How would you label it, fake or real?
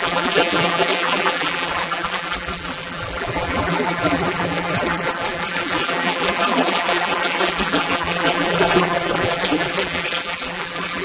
fake